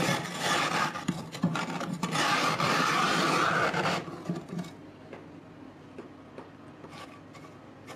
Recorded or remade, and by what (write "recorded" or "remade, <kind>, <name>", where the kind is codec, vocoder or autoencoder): recorded